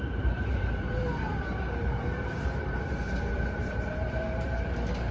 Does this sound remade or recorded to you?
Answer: remade